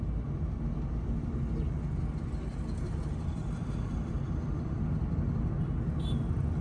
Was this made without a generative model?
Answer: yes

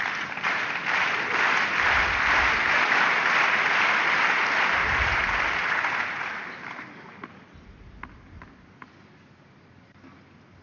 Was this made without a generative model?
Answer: yes